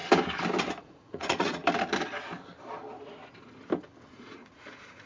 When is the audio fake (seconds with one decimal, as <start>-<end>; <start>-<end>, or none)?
0.8-1.6; 4.1-5.1